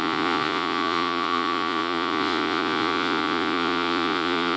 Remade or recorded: remade